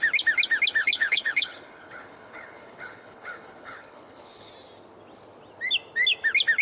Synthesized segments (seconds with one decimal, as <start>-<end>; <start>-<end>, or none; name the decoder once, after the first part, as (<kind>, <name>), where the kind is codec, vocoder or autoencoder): 0.8-4.5 (codec, HILCodec)